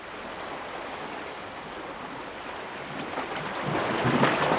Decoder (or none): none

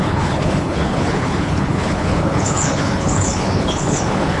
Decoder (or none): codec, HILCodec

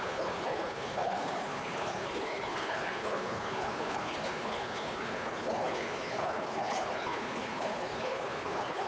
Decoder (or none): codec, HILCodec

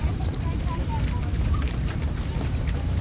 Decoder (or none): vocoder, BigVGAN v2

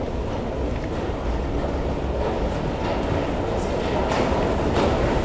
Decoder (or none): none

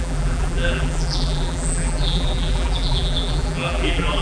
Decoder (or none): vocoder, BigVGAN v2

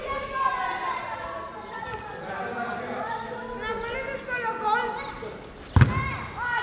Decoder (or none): none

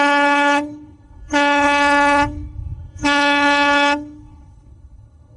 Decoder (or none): codec, HILCodec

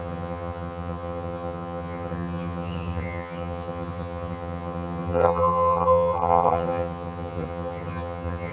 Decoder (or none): vocoder, HiFi-GAN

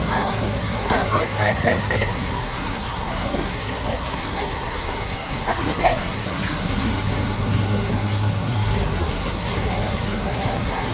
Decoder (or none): codec, SNAC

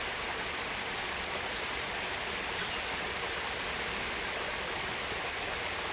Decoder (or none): none